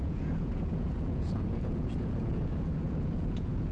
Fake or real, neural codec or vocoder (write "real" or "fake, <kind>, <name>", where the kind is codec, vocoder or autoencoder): fake, vocoder, Vocos